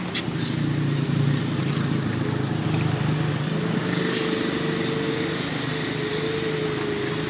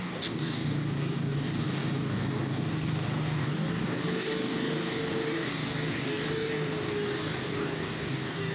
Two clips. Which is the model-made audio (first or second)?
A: second